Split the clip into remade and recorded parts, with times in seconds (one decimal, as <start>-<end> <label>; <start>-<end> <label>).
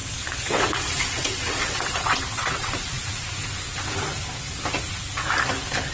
0.0-3.0 remade; 3.0-5.9 recorded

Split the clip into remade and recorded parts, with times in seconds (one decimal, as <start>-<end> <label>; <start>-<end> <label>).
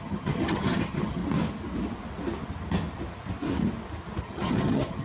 0.0-1.2 remade; 1.2-4.2 recorded; 4.2-5.0 remade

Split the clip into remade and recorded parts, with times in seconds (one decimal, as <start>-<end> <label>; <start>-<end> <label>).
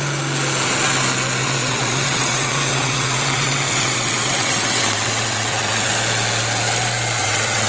0.0-1.4 recorded; 1.4-5.9 remade; 5.9-7.2 recorded; 7.2-7.7 remade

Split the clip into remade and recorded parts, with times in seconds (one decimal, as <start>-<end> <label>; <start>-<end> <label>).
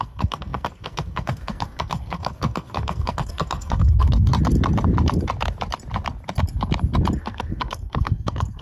0.0-4.3 remade; 4.3-7.2 recorded; 7.2-8.6 remade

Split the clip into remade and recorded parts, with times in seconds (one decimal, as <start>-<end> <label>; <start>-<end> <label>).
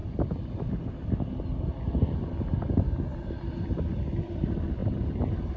0.0-3.4 recorded; 3.4-5.6 remade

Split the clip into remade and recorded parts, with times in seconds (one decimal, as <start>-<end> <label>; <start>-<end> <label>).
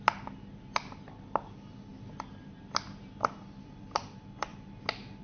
0.0-5.2 recorded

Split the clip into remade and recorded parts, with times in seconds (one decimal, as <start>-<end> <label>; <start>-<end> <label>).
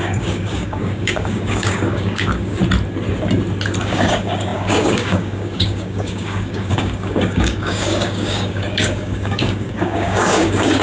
0.0-2.6 remade; 2.6-3.8 recorded; 3.8-10.8 remade